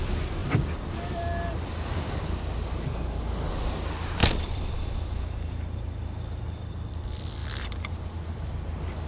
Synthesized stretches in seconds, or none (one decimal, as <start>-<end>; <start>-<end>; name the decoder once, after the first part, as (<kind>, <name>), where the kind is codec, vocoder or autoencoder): 0.4-2.2 (vocoder, BigVGAN v2); 4.2-4.7; 7.4-8.5

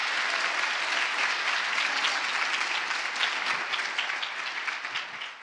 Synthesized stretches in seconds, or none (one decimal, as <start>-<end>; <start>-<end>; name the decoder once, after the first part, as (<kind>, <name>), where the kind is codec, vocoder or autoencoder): none